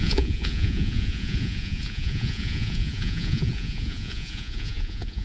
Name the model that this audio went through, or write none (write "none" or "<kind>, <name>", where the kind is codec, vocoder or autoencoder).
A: vocoder, Vocos